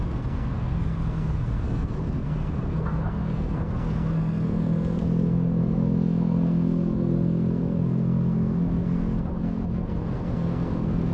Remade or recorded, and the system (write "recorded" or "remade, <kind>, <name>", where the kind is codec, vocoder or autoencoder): remade, codec, SNAC